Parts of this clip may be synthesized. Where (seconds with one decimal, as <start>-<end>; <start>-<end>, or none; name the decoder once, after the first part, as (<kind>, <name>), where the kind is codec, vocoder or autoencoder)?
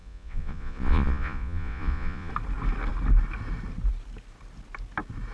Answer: 0.0-2.3 (vocoder, Vocos)